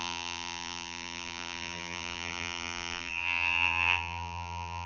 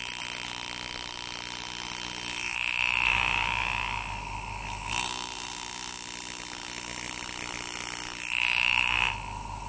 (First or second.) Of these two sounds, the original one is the second